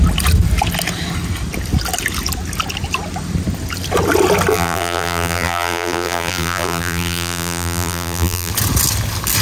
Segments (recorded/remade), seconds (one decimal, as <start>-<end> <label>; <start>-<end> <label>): 0.0-4.5 recorded; 4.5-8.5 remade; 8.5-9.4 recorded

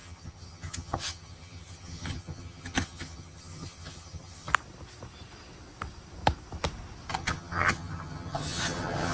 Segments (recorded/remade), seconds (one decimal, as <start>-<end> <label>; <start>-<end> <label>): 0.0-4.5 remade; 4.5-7.1 recorded; 7.1-9.1 remade

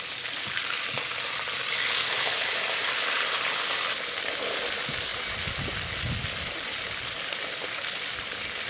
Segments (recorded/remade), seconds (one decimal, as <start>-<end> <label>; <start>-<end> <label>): 0.0-5.1 remade; 5.1-6.3 recorded; 6.3-8.7 remade

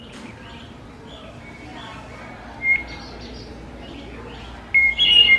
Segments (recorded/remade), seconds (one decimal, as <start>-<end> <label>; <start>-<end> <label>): 0.0-5.4 recorded

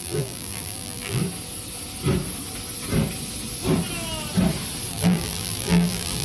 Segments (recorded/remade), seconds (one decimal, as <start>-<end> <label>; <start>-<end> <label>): 0.0-1.2 remade; 1.2-4.9 recorded; 4.9-6.2 remade

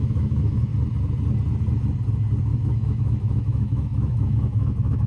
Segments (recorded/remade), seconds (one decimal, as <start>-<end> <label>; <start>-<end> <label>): 0.0-0.7 remade; 0.7-2.4 recorded; 2.4-5.1 remade

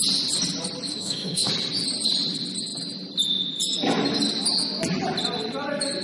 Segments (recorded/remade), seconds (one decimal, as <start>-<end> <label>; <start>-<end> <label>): 0.0-0.9 recorded; 0.9-1.5 remade; 1.5-6.0 recorded

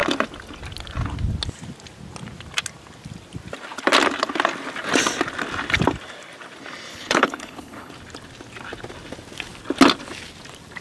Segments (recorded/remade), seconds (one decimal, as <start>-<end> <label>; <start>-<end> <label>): 0.0-6.9 recorded; 6.9-7.9 remade; 7.9-10.8 recorded